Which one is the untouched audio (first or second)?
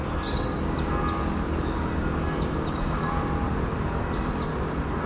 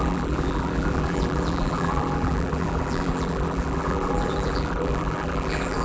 first